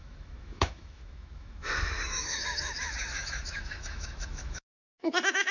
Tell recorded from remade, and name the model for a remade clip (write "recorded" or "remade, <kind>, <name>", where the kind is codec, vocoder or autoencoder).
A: remade, autoencoder, DAC-VAE